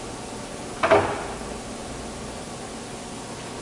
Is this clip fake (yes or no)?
no